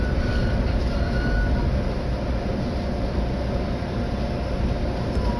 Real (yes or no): yes